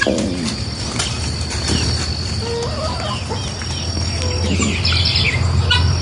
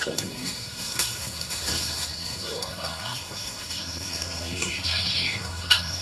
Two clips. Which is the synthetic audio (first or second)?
second